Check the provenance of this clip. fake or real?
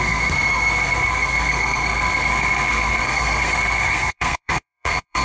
fake